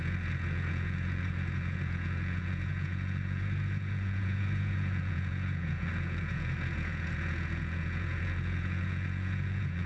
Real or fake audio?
fake